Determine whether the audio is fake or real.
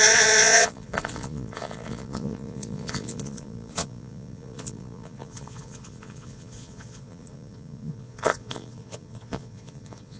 fake